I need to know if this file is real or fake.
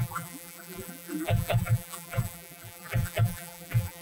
fake